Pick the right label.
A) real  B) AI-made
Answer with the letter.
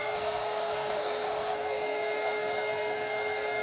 B